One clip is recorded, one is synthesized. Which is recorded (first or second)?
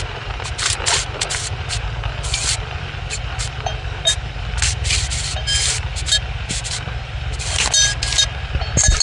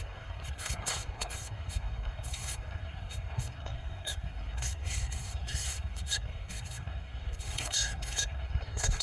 first